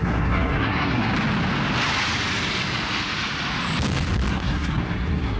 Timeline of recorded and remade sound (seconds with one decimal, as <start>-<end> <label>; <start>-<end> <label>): 0.0-1.1 remade; 1.1-4.3 recorded; 4.3-5.4 remade